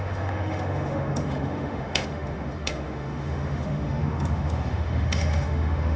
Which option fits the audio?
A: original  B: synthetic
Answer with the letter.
B